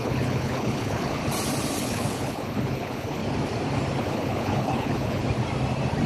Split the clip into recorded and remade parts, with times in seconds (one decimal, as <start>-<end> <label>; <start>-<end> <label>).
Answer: 0.0-1.2 remade; 1.2-1.8 recorded; 1.8-3.2 remade; 3.2-4.0 recorded; 4.0-5.2 remade; 5.2-6.1 recorded

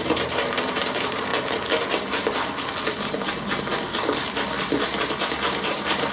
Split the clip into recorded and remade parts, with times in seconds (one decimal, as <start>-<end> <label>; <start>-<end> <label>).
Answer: 0.0-1.3 remade; 1.3-5.0 recorded; 5.0-6.1 remade